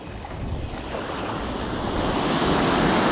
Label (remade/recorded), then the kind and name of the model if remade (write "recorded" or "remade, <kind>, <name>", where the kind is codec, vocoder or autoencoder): recorded